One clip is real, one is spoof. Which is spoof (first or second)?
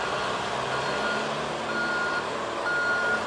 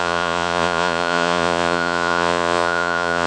second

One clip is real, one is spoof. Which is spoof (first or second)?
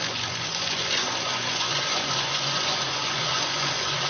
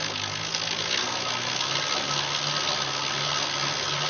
first